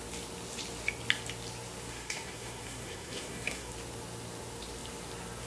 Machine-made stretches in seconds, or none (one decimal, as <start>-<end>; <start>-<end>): 1.9-3.7